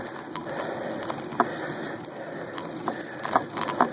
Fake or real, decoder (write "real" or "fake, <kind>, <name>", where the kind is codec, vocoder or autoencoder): real